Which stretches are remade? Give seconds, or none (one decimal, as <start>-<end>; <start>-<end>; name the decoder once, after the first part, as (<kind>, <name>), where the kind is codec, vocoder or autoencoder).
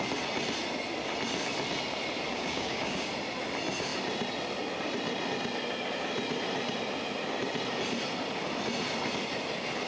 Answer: 2.3-3.1 (codec, DAC)